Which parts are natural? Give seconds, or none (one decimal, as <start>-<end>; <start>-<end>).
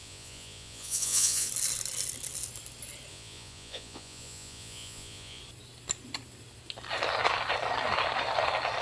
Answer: 1.5-3.1; 5.4-8.8